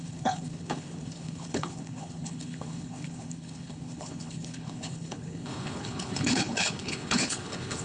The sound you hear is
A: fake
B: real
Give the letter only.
A